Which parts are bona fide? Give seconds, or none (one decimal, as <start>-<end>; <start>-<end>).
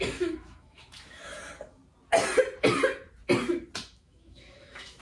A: 1.8-3.8